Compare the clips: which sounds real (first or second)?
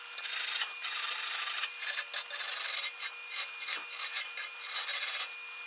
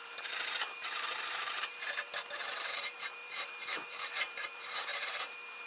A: first